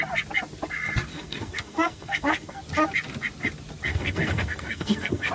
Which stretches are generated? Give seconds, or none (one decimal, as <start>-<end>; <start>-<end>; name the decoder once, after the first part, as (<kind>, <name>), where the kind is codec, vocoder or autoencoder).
1.1-2.6 (codec, SNAC); 3.9-5.3